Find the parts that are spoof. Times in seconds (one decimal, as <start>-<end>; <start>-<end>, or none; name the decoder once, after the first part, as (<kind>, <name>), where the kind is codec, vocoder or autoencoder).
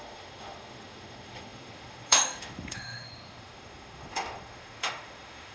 0.0-5.5 (autoencoder, DAC-VAE)